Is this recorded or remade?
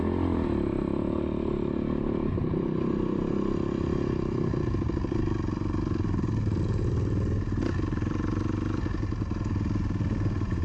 recorded